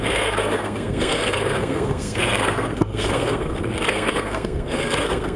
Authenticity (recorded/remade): remade